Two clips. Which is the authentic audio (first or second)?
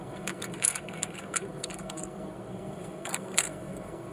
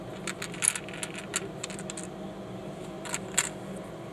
second